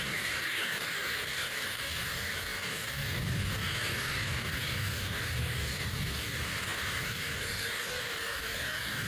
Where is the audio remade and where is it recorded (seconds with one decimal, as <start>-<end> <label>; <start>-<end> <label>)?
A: 0.0-9.1 remade